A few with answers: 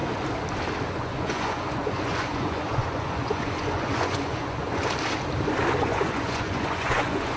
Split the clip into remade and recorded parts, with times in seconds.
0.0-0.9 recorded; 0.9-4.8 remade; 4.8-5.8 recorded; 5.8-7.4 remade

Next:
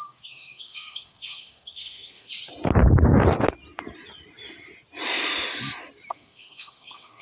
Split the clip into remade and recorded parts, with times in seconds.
0.0-2.3 remade; 2.3-6.1 recorded; 6.1-7.2 remade

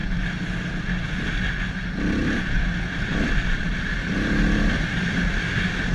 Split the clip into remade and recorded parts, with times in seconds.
0.0-2.2 recorded; 2.2-5.5 remade; 5.5-5.9 recorded

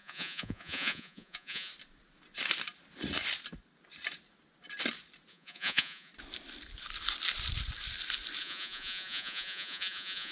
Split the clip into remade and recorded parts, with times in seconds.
0.0-1.7 remade; 1.7-5.3 recorded; 5.3-6.1 remade; 6.1-8.4 recorded; 8.4-10.3 remade

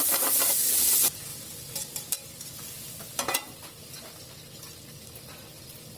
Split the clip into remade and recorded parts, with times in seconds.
0.0-1.3 recorded; 1.3-4.2 remade; 4.2-6.0 recorded

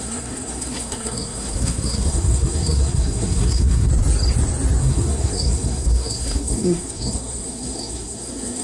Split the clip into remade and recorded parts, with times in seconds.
0.0-3.9 remade; 3.9-4.8 recorded; 4.8-8.6 remade

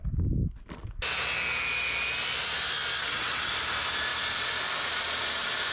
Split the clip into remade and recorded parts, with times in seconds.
0.0-3.0 recorded; 3.0-3.5 remade; 3.5-5.7 recorded

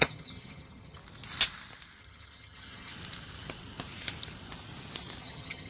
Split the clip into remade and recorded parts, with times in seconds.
0.0-1.0 remade; 1.0-2.0 recorded; 2.0-2.9 remade; 2.9-5.2 recorded; 5.2-5.7 remade